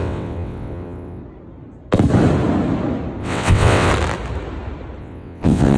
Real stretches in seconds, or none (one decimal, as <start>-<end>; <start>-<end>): 1.2-3.2; 3.9-5.0